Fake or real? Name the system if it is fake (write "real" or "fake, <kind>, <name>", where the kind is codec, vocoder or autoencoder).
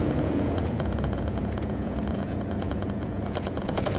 fake, vocoder, Vocos